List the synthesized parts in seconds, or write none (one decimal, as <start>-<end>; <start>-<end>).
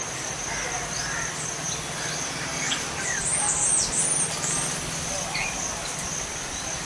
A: none